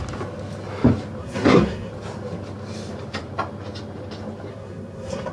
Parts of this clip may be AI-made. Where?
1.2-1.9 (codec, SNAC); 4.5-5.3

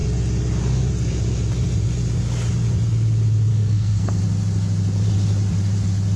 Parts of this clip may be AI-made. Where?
3.5-4.2 (codec, SNAC)

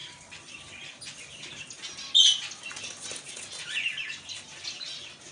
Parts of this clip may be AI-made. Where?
none

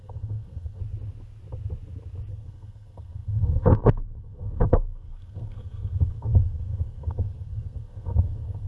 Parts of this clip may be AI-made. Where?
0.0-0.8 (codec, SNAC); 2.3-8.7